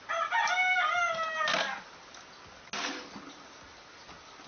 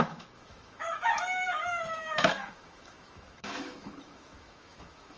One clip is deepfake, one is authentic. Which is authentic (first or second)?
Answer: first